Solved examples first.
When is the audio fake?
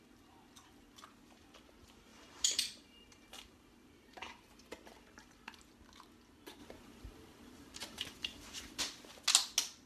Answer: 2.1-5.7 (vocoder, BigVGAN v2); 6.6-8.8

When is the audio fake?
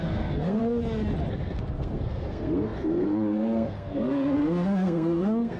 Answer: 0.0-0.6 (codec, SNAC); 1.3-5.6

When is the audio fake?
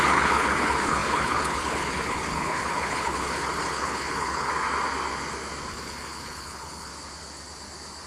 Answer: 0.0-4.5 (codec, HILCodec); 5.7-6.9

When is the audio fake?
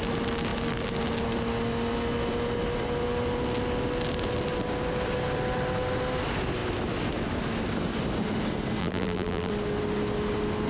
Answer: 8.8-9.5 (vocoder, BigVGAN v2)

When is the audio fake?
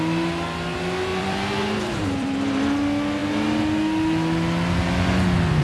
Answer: 1.1-2.6 (vocoder, BigVGAN v2)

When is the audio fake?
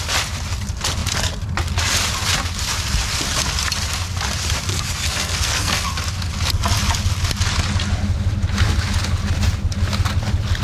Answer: 4.7-5.9 (codec, SNAC)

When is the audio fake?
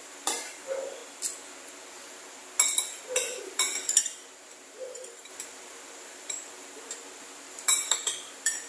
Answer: 0.0-1.0 (vocoder, BigVGAN v2); 3.4-8.7